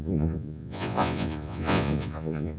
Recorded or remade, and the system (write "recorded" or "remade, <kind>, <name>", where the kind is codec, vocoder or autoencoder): remade, vocoder, Vocos